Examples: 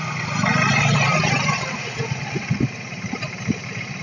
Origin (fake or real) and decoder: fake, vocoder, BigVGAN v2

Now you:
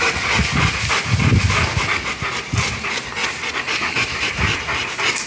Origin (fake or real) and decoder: real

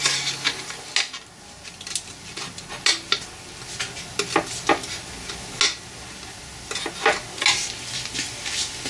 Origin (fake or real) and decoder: real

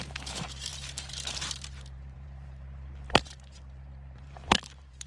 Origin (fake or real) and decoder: fake, vocoder, BigVGAN v2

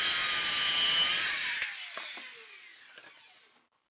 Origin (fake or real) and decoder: real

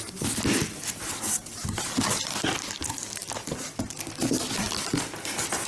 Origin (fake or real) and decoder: fake, vocoder, BigVGAN v2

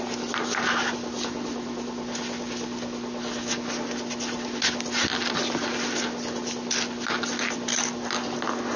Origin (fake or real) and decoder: real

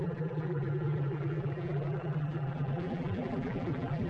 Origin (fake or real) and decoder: fake, vocoder, BigVGAN v2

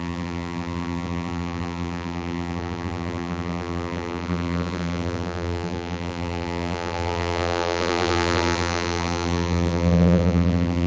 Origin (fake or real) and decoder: fake, vocoder, BigVGAN v2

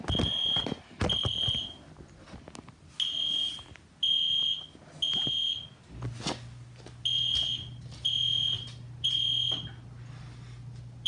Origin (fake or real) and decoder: real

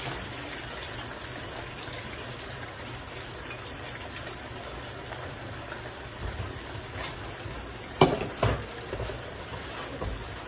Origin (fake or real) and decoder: fake, vocoder, BigVGAN v2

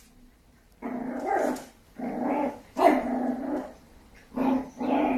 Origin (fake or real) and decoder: real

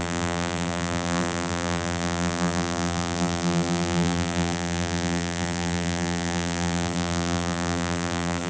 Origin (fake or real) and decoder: fake, vocoder, BigVGAN v2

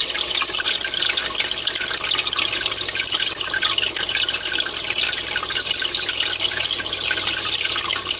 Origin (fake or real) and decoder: real